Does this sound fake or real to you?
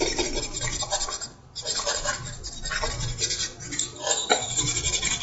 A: fake